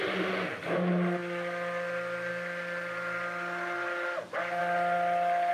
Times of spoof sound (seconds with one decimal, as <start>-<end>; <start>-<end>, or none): none